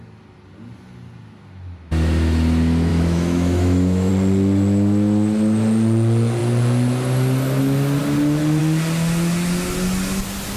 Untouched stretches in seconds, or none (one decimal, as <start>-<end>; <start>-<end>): 0.0-2.9; 4.1-10.6